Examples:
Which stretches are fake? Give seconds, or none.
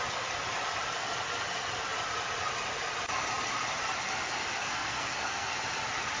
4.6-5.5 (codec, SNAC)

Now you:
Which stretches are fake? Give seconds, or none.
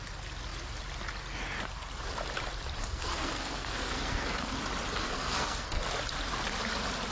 2.8-4.6 (codec, SNAC); 5.0-5.9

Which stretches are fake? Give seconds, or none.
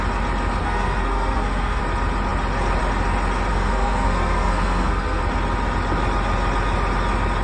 0.6-1.8 (codec, SNAC); 3.5-5.2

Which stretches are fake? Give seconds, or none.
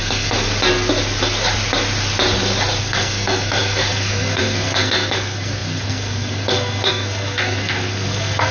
0.0-0.5 (codec, SNAC); 2.8-8.5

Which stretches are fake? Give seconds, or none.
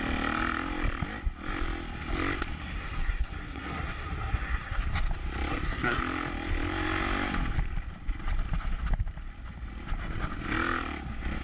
2.6-4.8 (codec, SNAC); 5.5-6.0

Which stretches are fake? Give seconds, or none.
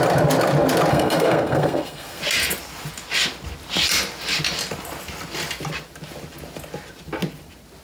0.9-2.2 (codec, SNAC)